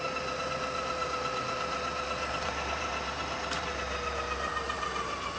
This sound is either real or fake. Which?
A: fake